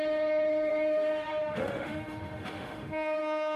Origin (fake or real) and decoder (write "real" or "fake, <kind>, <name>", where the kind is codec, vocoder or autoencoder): fake, autoencoder, DAC-VAE